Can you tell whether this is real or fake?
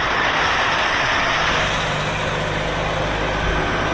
real